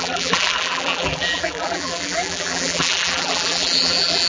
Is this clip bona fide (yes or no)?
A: no